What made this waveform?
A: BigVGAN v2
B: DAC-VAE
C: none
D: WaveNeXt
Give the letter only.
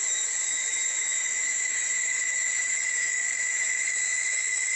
B